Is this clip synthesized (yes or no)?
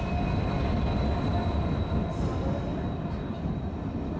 no